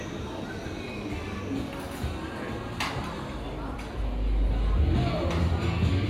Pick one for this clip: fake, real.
real